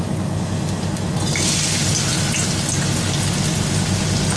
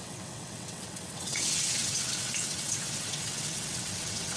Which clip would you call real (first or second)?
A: first